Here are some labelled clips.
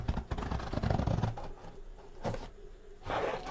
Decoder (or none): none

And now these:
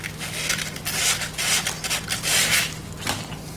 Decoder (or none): none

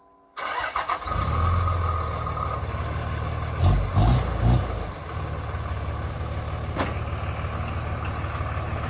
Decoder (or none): none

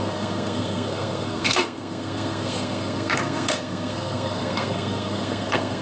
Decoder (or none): codec, SNAC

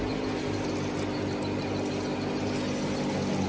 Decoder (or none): none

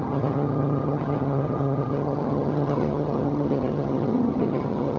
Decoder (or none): vocoder, HiFi-GAN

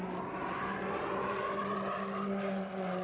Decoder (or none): vocoder, BigVGAN v2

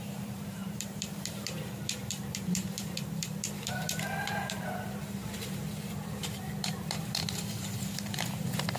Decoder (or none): vocoder, BigVGAN v2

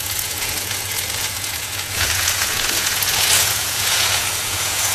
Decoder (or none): vocoder, Vocos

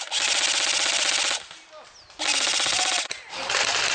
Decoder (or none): none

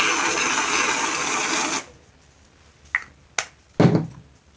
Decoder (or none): none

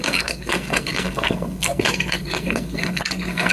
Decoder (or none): codec, SNAC